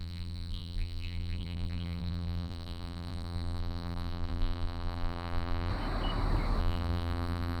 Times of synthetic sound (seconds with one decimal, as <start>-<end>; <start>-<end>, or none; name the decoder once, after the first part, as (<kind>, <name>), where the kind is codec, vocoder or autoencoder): 0.0-5.7 (vocoder, BigVGAN v2); 6.6-7.6